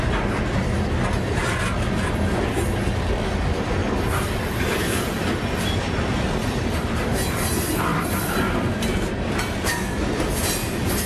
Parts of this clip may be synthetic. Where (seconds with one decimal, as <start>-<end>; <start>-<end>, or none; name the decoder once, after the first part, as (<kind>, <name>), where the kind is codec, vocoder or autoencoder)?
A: 3.8-6.5 (vocoder, BigVGAN v2); 7.9-11.1